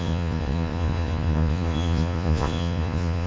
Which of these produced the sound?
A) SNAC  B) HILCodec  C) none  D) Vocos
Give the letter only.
D